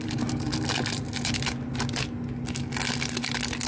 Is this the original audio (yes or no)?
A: yes